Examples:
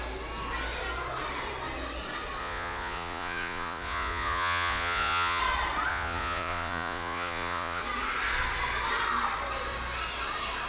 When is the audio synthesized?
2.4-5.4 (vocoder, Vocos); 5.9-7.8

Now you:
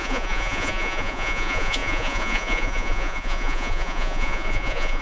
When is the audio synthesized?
0.0-5.0 (vocoder, Vocos)

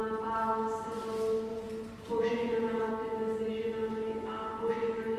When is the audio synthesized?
1.5-2.9 (vocoder, Vocos)

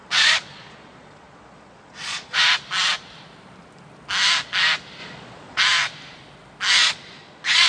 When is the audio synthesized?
0.0-2.4 (vocoder, Vocos); 5.0-5.6; 6.8-7.7

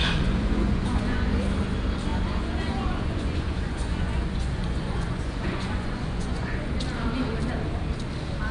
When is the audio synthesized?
0.0-1.3 (vocoder, Vocos); 2.1-6.7

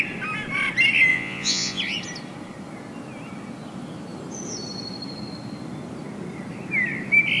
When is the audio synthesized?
1.1-1.8 (vocoder, Vocos)

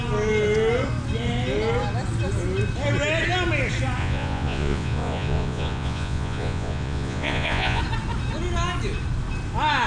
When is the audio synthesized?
4.0-7.8 (vocoder, Vocos)